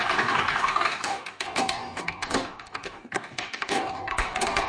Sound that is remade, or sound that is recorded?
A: remade